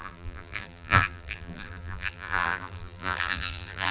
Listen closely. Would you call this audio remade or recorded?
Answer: remade